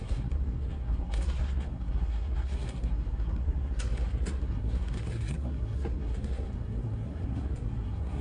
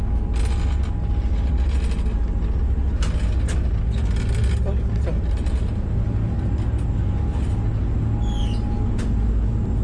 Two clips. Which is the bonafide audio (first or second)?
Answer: second